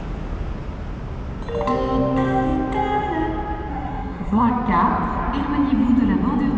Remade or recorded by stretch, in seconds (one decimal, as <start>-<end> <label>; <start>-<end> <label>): 0.0-3.7 recorded; 3.7-4.5 remade; 4.5-6.6 recorded